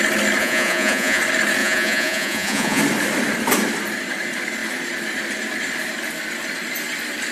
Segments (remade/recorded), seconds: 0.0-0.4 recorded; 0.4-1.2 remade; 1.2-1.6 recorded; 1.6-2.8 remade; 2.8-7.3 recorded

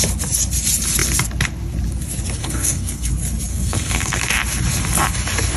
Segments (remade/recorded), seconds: 0.0-2.4 recorded; 2.4-3.1 remade; 3.1-3.5 recorded; 3.5-4.2 remade; 4.2-5.6 recorded

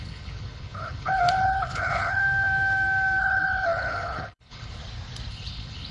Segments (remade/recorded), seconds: 0.0-2.2 remade; 2.2-3.2 recorded; 3.2-4.8 remade; 4.8-5.3 recorded; 5.3-5.9 remade

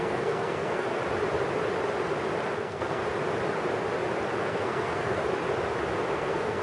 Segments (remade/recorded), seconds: 0.0-0.9 remade; 0.9-2.6 recorded; 2.6-3.0 remade; 3.0-4.4 recorded; 4.4-5.2 remade; 5.2-6.1 recorded; 6.1-6.6 remade

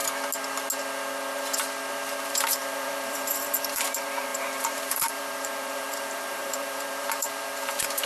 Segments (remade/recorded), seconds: 0.0-2.2 recorded; 2.2-8.1 remade

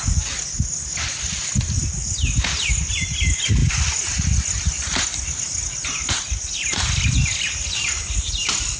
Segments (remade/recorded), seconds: 0.0-8.8 recorded

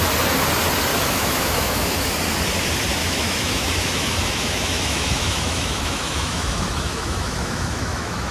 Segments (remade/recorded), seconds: 0.0-0.9 recorded; 0.9-2.1 remade; 2.1-3.0 recorded; 3.0-8.3 remade

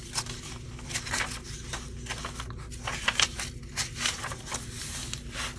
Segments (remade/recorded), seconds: 0.0-5.6 recorded